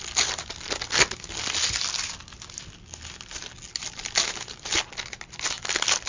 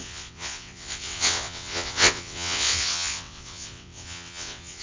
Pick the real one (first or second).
first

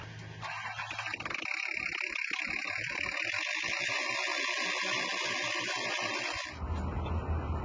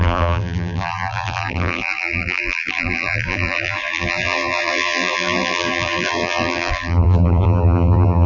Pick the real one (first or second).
first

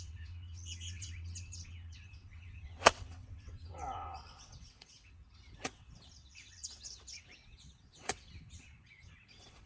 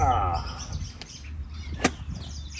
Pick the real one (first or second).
second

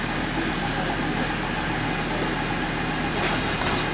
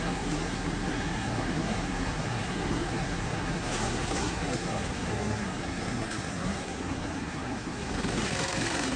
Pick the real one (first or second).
first